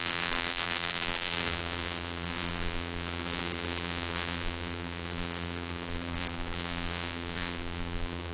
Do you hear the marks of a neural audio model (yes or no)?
yes